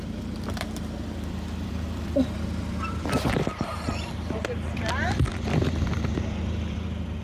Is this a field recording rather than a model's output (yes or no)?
no